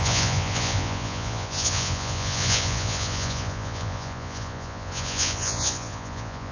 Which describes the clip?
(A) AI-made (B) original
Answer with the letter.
A